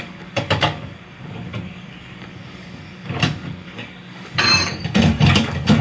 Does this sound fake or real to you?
fake